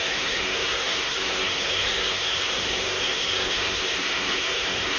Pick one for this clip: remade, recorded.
remade